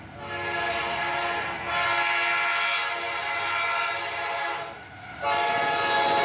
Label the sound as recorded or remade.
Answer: recorded